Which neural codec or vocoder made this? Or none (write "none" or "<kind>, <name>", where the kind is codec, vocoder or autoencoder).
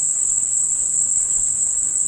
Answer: codec, HILCodec